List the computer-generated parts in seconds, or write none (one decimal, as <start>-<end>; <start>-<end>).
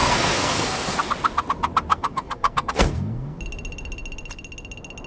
0.0-1.1; 1.9-3.4